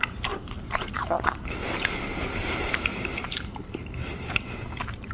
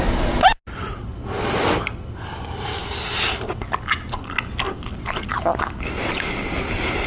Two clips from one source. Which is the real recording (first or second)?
second